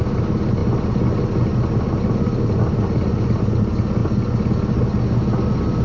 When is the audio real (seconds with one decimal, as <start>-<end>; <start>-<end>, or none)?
0.0-5.8